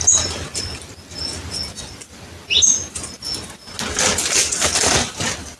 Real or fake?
real